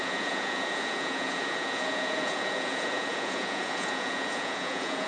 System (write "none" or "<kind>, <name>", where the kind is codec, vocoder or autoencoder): vocoder, Vocos